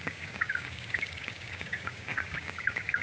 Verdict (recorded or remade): remade